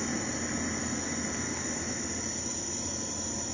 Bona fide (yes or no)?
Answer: yes